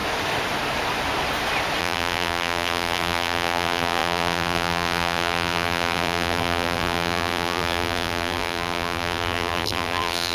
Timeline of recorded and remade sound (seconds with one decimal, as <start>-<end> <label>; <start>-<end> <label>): 0.0-1.8 recorded; 1.8-10.3 remade